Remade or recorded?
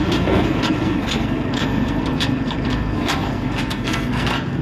remade